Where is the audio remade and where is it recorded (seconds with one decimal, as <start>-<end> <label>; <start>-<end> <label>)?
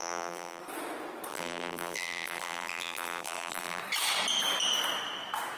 0.0-0.6 remade; 0.6-1.3 recorded; 1.3-3.8 remade; 3.8-5.6 recorded